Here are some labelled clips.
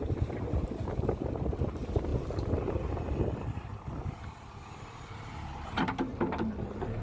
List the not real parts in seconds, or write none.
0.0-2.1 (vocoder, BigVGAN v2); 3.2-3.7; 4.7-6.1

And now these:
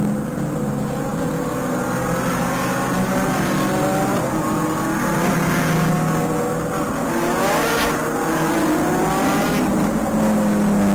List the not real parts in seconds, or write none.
none

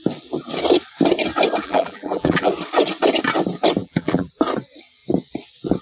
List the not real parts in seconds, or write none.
1.6-2.5 (vocoder, BigVGAN v2); 3.8-4.3